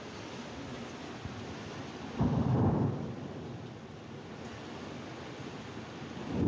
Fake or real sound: real